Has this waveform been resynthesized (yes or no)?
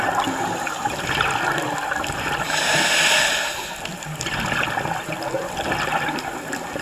no